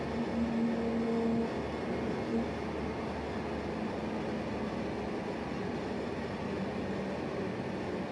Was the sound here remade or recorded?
recorded